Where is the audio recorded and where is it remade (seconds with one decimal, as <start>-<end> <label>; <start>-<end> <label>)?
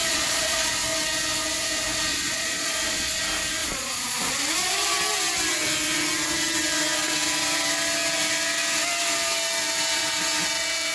0.0-0.7 remade; 0.7-2.1 recorded; 2.1-3.2 remade; 3.2-3.6 recorded; 3.6-4.3 remade; 4.3-10.9 recorded